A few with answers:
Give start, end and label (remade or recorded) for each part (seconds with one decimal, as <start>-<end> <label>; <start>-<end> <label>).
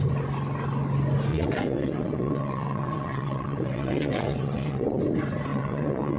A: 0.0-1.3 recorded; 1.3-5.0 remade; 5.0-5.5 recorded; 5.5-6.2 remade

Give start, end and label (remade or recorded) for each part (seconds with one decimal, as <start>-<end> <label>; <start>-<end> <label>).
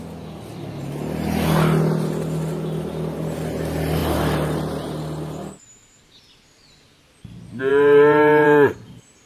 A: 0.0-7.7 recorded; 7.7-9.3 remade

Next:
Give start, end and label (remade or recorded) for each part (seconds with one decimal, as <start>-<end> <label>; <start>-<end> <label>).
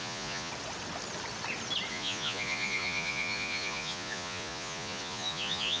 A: 0.0-0.5 remade; 0.5-1.9 recorded; 1.9-5.8 remade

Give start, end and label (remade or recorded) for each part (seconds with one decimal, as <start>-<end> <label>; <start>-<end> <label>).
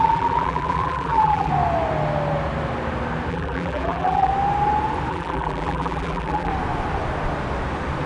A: 0.0-1.5 remade; 1.5-3.3 recorded; 3.3-4.3 remade; 4.3-5.1 recorded; 5.1-6.5 remade; 6.5-8.1 recorded